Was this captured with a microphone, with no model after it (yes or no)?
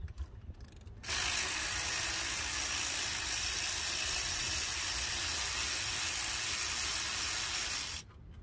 yes